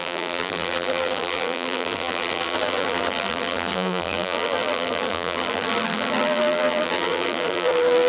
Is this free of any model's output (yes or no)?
no